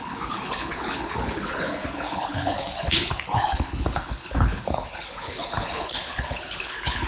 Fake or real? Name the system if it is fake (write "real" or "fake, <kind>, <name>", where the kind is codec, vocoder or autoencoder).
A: fake, codec, HILCodec